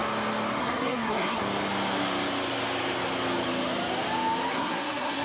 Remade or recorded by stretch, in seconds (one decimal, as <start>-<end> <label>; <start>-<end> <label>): 0.0-0.6 recorded; 0.6-1.4 remade; 1.4-4.5 recorded; 4.5-5.2 remade